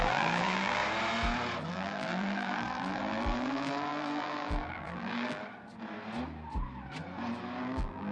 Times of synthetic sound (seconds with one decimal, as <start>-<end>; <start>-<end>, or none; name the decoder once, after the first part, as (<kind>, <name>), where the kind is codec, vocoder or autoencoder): 0.0-0.8 (vocoder, BigVGAN v2); 1.7-5.4; 7.6-8.1